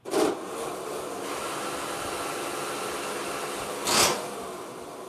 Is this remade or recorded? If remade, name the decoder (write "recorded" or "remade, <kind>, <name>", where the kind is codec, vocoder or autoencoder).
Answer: recorded